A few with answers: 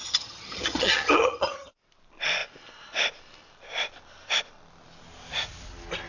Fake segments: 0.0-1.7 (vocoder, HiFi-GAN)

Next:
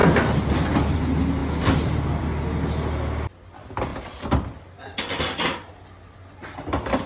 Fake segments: 0.0-0.5 (vocoder, BigVGAN v2); 3.9-5.2

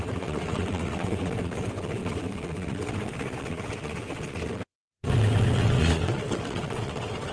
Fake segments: 0.0-7.3 (vocoder, WaveNeXt)

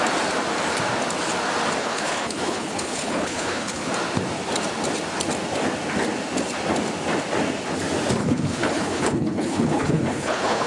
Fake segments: 1.8-3.9 (codec, HILCodec); 8.2-10.7